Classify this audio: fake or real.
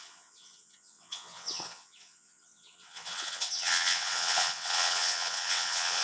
fake